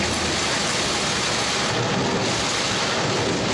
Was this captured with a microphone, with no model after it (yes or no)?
yes